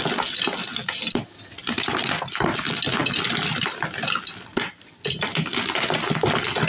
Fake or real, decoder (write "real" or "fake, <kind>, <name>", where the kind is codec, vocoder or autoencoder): real